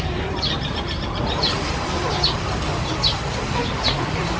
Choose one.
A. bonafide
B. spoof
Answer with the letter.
B